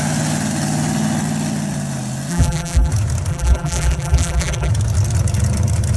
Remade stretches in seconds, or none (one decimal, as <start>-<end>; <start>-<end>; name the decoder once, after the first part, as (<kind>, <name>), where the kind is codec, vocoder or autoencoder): 2.3-2.9 (vocoder, BigVGAN v2); 3.3-4.7